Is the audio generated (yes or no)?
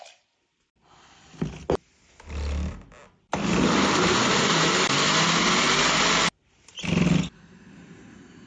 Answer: no